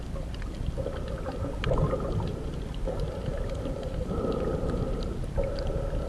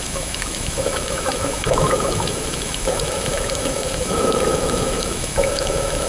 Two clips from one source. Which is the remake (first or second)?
second